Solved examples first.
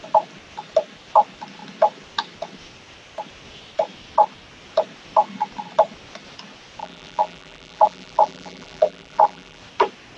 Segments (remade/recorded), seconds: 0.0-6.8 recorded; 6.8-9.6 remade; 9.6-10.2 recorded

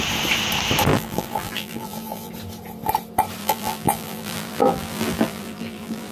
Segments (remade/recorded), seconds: 0.0-0.9 recorded; 0.9-2.3 remade; 2.3-3.4 recorded; 3.4-6.1 remade

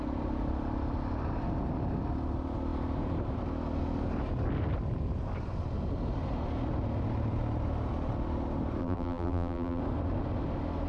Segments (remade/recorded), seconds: 0.0-8.8 recorded; 8.8-9.8 remade; 9.8-10.9 recorded

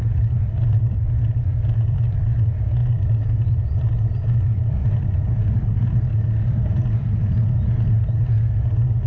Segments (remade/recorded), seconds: 0.0-2.8 recorded; 2.8-3.8 remade; 3.8-4.8 recorded; 4.8-5.9 remade; 5.9-9.1 recorded

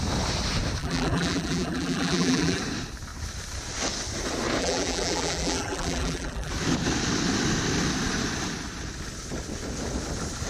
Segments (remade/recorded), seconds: 0.0-0.8 recorded; 0.8-2.6 remade; 2.6-4.6 recorded; 4.6-6.5 remade; 6.5-10.5 recorded